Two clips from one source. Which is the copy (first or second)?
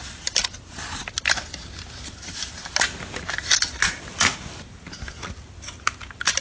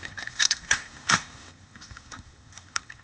second